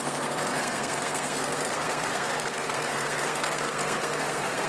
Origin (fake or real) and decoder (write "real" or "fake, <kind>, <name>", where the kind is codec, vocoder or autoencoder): fake, codec, SNAC